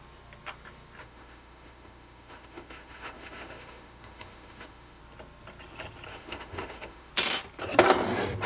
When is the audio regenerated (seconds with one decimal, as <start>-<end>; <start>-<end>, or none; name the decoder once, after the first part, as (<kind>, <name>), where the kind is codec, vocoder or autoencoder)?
1.0-5.0 (autoencoder, DAC-VAE); 6.1-7.1